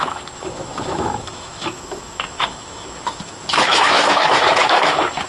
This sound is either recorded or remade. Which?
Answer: remade